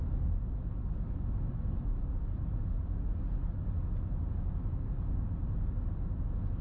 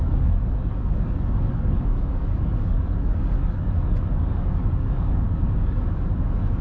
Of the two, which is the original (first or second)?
first